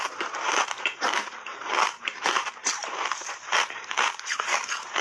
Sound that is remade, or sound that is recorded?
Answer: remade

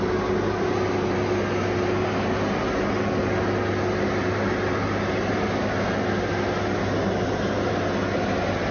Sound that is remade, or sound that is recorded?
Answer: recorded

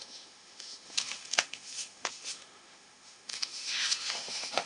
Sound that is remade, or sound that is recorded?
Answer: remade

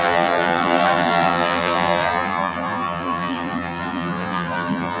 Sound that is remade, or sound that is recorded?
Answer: remade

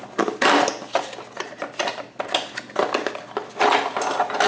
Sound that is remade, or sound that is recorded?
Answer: recorded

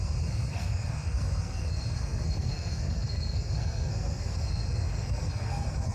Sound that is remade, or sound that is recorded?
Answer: remade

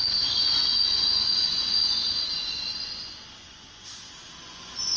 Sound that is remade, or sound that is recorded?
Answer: remade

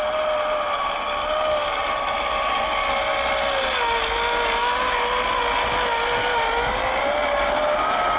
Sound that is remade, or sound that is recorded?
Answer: recorded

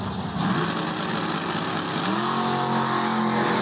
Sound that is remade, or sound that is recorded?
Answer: recorded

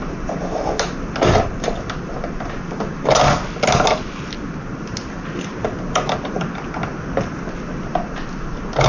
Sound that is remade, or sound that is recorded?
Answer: recorded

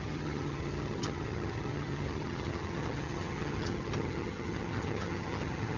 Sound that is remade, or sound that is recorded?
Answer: remade